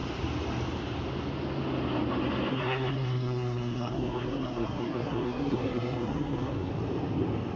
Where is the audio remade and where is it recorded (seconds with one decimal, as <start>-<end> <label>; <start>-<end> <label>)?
0.0-2.5 recorded; 2.5-6.7 remade; 6.7-7.6 recorded